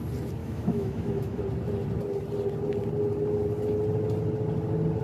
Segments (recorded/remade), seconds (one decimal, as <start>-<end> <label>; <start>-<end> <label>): 0.0-0.4 recorded; 0.4-1.4 remade; 1.4-5.0 recorded